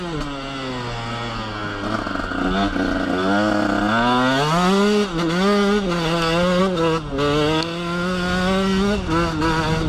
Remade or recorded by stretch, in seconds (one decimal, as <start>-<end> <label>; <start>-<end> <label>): 0.0-9.9 recorded